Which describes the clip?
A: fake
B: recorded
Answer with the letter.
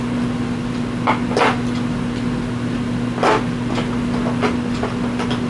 B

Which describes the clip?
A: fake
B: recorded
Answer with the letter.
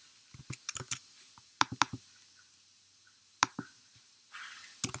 B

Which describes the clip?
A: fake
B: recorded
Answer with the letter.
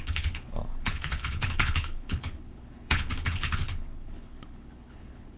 A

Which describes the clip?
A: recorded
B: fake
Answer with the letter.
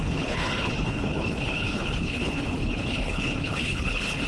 B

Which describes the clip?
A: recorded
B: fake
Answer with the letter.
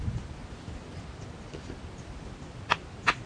A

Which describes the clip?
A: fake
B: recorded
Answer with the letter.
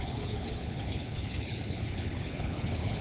A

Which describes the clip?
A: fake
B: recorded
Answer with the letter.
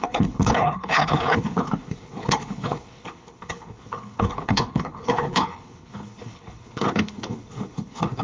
A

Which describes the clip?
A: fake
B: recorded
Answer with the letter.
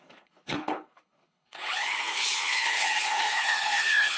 A